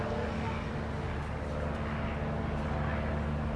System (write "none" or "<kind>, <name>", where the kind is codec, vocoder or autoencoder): none